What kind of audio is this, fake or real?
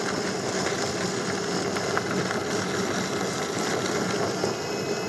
real